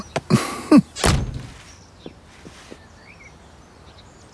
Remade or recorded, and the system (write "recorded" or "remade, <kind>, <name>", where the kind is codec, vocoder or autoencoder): recorded